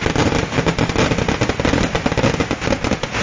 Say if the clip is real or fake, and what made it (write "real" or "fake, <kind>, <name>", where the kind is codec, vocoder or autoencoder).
real